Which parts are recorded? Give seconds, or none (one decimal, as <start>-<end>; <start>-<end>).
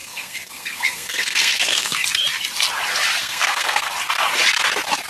2.0-3.2; 3.9-5.1